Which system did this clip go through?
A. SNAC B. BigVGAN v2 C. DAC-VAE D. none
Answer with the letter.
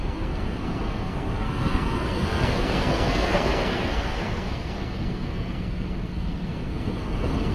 A